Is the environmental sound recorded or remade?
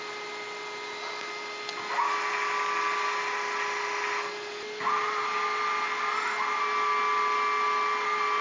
recorded